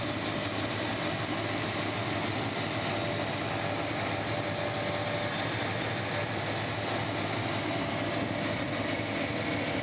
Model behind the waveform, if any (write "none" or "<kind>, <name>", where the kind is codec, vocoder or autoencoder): none